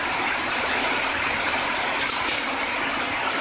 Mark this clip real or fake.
real